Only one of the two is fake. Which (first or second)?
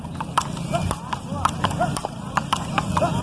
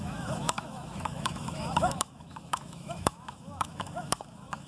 second